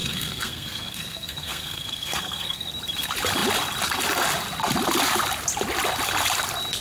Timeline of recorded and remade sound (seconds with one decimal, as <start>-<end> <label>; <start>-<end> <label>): 0.0-2.7 remade; 2.7-6.8 recorded